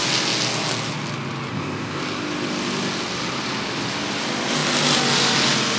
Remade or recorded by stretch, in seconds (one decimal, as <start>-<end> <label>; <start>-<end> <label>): 0.0-1.5 recorded; 1.5-2.0 remade; 2.0-5.8 recorded